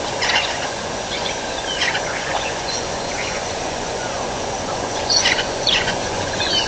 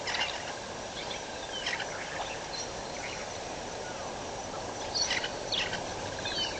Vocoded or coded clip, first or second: first